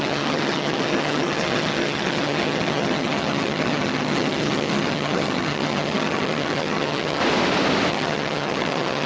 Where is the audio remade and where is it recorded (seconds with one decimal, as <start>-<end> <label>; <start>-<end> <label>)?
0.0-7.2 remade; 7.2-7.9 recorded; 7.9-9.1 remade